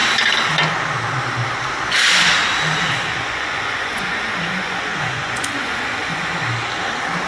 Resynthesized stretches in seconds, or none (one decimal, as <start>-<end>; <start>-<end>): 3.1-6.3